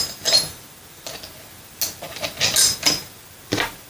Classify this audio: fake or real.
real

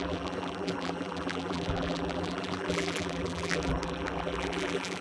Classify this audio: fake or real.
fake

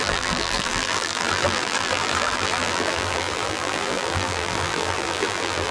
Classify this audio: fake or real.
fake